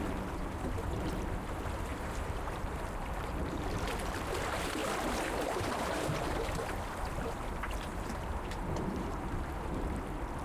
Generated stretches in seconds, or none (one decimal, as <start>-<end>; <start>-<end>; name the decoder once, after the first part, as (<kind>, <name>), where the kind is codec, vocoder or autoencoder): 1.9-3.7 (vocoder, BigVGAN v2); 7.9-10.0